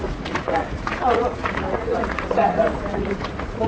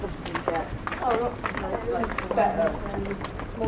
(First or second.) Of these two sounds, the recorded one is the second